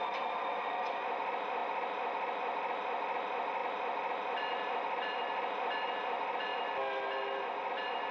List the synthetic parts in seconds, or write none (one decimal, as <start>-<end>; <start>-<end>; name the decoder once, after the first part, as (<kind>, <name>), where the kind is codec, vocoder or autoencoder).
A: none